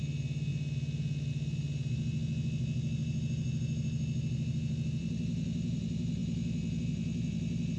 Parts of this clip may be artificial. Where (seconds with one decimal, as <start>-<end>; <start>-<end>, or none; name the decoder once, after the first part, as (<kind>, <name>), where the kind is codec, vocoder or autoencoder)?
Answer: none